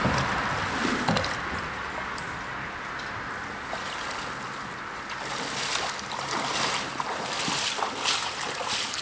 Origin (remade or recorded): recorded